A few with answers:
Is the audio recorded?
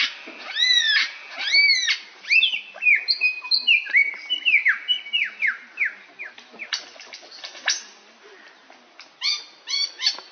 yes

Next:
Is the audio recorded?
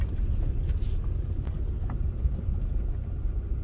yes